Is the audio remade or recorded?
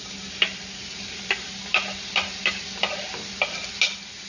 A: recorded